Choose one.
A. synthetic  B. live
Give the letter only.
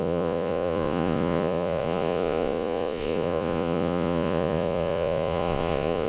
A